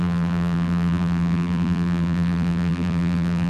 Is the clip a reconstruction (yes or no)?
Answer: yes